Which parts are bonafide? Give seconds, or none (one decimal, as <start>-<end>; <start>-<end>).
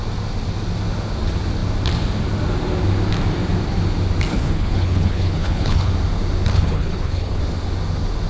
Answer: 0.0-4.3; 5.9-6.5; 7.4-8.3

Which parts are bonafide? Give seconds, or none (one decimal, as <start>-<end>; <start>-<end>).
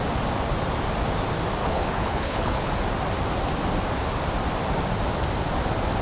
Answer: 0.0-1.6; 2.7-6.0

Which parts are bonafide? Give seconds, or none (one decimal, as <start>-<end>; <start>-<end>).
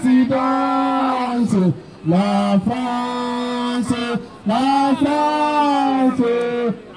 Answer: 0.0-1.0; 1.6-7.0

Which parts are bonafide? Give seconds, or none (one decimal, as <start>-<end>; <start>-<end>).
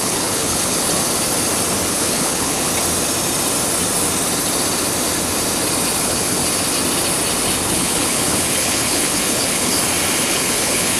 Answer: 1.0-1.9; 2.7-6.0; 6.4-7.7; 9.7-10.2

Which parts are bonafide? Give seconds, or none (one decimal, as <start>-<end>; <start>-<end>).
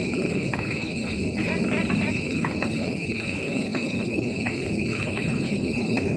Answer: 1.5-2.1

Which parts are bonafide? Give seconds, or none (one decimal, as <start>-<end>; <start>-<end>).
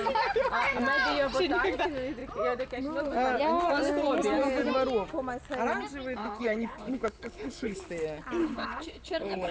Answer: 0.0-6.2; 7.8-8.4